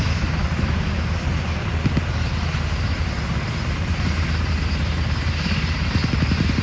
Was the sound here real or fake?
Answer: real